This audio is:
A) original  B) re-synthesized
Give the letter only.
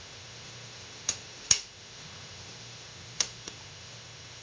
B